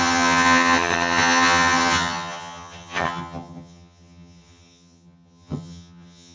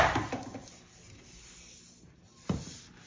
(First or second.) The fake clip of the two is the first